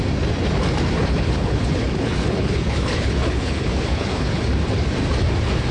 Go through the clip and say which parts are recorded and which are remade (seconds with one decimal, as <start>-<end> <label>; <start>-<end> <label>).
0.0-1.0 recorded; 1.0-4.4 remade; 4.4-5.7 recorded